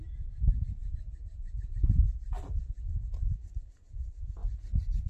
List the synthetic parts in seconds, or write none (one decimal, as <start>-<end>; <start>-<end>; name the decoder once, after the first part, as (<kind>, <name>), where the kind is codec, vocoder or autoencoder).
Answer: none